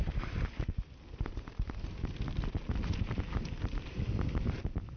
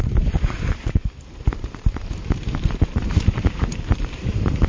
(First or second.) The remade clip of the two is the second